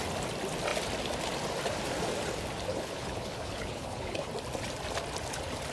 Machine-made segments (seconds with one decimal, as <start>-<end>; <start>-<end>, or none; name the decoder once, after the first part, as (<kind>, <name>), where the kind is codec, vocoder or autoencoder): 2.7-4.3 (codec, HILCodec)